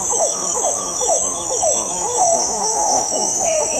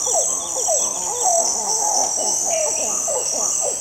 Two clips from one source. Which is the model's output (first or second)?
first